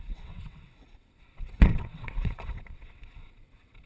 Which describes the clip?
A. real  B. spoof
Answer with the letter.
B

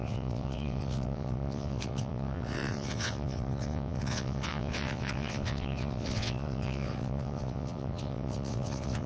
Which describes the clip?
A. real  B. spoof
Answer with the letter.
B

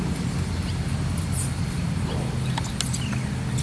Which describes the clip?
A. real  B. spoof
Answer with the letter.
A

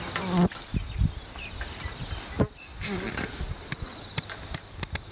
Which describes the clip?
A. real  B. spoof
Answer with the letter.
A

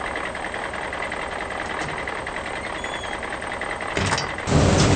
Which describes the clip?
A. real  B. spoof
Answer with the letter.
A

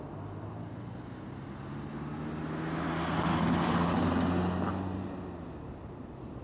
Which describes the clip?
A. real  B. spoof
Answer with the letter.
A